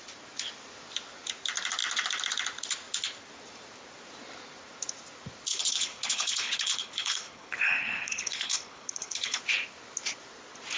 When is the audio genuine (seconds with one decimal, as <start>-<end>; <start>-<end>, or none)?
0.0-5.5; 9.4-10.8